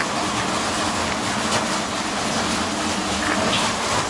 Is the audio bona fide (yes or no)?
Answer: yes